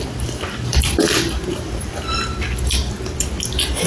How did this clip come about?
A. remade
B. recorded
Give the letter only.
B